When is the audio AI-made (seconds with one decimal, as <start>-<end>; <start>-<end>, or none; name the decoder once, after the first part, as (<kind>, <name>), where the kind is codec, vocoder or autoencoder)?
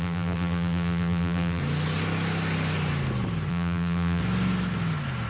0.0-1.6 (vocoder, BigVGAN v2); 3.5-4.2